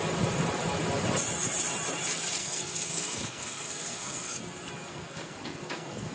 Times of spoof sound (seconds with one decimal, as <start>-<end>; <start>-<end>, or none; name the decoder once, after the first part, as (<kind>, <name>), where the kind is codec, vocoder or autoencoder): 2.4-4.4 (codec, SNAC); 4.9-6.1